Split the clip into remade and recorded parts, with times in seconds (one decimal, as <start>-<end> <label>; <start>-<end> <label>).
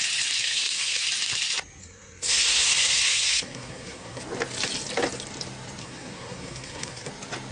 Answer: 0.0-0.4 recorded; 0.4-1.0 remade; 1.0-1.8 recorded; 1.8-4.2 remade; 4.2-5.8 recorded; 5.8-7.1 remade; 7.1-7.5 recorded